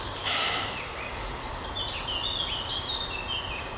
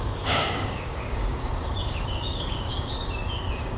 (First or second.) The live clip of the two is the first